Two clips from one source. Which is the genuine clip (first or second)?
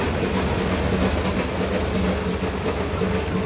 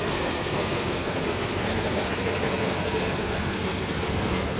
first